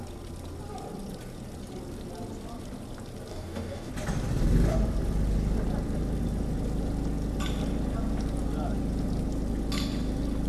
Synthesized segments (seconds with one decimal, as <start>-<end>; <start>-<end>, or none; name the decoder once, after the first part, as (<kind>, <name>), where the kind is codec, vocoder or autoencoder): 3.3-3.9 (codec, DAC)